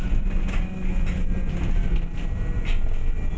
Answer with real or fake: real